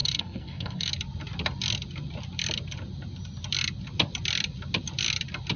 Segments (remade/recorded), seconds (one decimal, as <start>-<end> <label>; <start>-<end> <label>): 0.0-0.9 remade; 0.9-5.6 recorded